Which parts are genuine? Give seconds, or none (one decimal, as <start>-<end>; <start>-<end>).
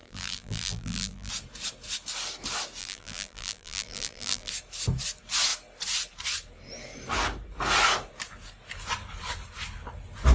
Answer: 1.3-2.8; 4.5-10.3